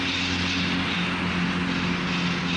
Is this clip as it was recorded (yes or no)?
yes